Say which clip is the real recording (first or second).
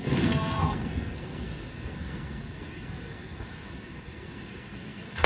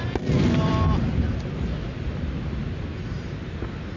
second